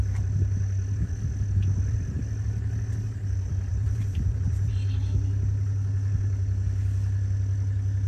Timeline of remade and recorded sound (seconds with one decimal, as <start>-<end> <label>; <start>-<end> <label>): 0.0-3.7 recorded; 3.7-4.7 remade; 4.7-8.1 recorded